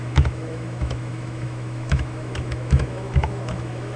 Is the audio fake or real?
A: fake